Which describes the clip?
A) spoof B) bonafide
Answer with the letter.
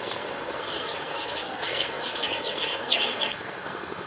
A